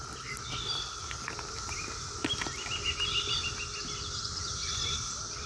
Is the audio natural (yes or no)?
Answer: yes